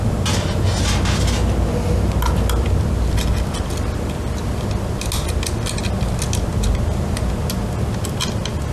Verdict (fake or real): real